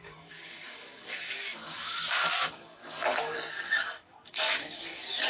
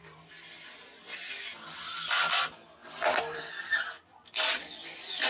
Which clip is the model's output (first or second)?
first